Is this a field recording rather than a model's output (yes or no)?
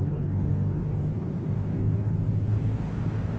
no